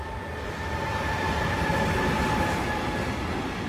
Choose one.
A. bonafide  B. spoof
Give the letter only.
A